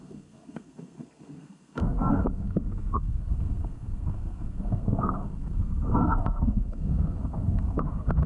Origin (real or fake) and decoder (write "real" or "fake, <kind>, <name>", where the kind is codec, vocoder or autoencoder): fake, codec, SNAC